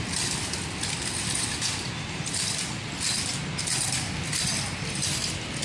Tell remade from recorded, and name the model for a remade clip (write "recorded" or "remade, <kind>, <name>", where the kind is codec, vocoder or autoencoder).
recorded